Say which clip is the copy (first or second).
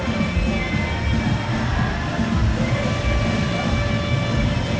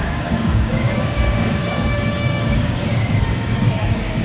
second